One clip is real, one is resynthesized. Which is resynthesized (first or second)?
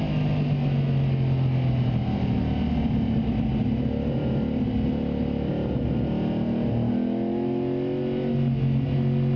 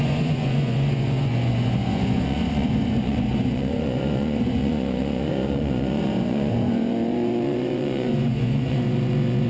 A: second